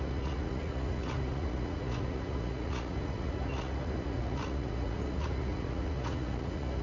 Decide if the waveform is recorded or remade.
remade